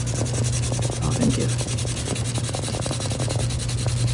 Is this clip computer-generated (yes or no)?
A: no